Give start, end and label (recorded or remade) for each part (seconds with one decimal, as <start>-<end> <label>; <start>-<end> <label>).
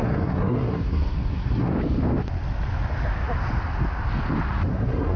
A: 0.0-1.7 remade; 1.7-4.7 recorded; 4.7-5.2 remade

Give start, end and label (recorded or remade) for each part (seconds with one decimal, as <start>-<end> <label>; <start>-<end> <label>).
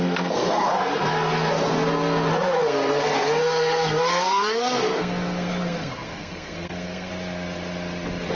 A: 0.0-7.1 remade; 7.1-8.3 recorded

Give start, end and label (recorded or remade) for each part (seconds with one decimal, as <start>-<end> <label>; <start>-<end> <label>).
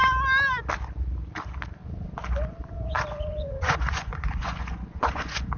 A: 0.0-1.8 recorded; 1.8-5.6 remade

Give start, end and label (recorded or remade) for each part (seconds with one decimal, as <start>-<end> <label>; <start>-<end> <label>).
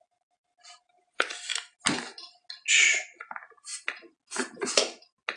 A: 0.0-5.4 recorded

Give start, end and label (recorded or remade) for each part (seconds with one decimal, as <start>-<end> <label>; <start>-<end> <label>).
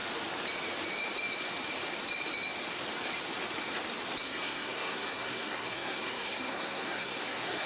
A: 0.0-4.2 recorded; 4.2-7.7 remade